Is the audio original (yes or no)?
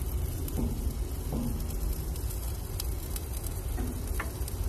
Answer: yes